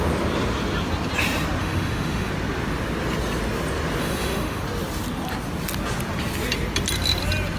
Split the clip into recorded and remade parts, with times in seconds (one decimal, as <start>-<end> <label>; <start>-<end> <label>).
0.0-1.6 recorded; 1.6-2.3 remade; 2.3-4.0 recorded; 4.0-4.6 remade; 4.6-7.6 recorded